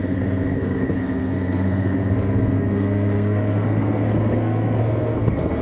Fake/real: fake